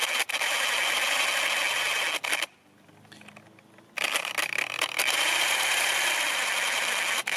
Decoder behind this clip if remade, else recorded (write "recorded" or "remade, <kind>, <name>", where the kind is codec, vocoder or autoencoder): recorded